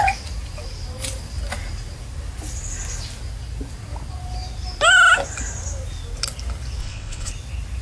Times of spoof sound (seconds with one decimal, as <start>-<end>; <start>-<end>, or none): 6.8-7.3